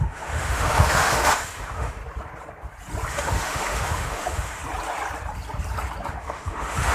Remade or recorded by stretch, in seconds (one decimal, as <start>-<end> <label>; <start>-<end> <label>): 0.0-2.0 remade; 2.0-3.1 recorded; 3.1-4.6 remade; 4.6-6.1 recorded; 6.1-6.9 remade